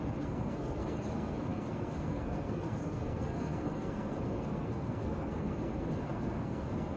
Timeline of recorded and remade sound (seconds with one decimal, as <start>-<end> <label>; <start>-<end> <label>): 0.0-7.0 remade